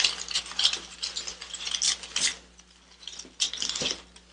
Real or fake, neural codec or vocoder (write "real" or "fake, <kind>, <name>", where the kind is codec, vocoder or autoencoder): real